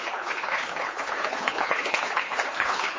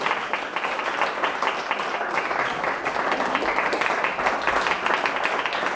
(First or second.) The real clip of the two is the second